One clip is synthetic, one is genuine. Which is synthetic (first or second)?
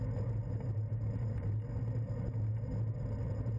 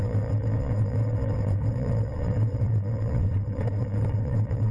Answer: second